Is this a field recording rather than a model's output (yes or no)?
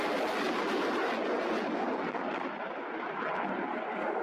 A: yes